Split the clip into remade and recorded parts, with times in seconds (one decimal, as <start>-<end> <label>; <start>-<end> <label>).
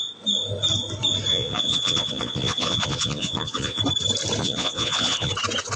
0.0-1.3 recorded; 1.3-3.8 remade; 3.8-4.4 recorded; 4.4-5.3 remade; 5.3-5.8 recorded